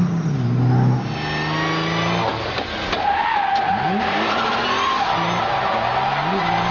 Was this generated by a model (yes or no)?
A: no